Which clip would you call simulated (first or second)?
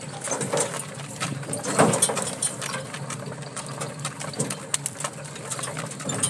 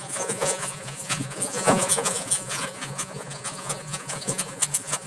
second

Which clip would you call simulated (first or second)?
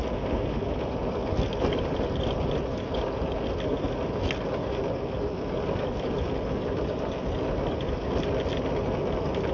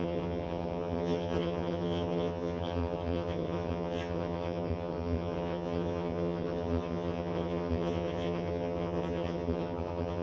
second